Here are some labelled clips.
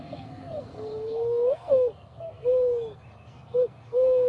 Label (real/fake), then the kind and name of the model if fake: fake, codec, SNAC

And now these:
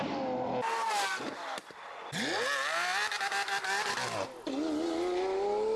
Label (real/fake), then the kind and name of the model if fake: real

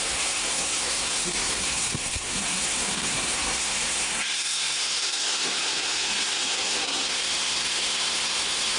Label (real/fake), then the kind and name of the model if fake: fake, codec, SNAC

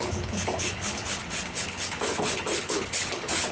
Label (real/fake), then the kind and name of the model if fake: fake, codec, HILCodec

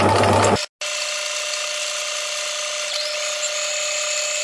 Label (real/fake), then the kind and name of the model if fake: real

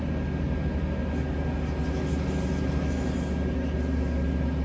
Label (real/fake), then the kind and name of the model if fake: real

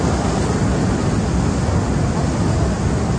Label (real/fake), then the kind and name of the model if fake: real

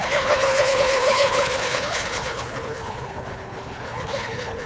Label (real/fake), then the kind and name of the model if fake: fake, codec, HILCodec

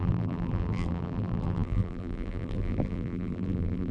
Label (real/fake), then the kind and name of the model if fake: fake, vocoder, BigVGAN v2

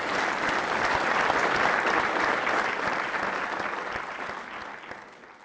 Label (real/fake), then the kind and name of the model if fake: real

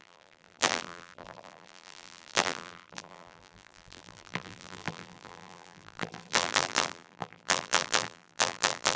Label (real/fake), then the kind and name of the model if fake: fake, vocoder, BigVGAN v2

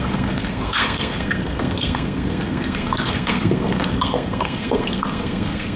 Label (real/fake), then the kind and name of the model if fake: fake, codec, SNAC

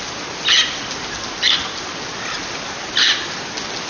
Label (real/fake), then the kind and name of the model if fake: real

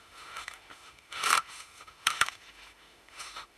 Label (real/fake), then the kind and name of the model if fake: fake, autoencoder, DAC-VAE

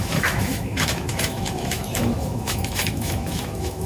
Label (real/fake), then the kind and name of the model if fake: fake, autoencoder, DAC-VAE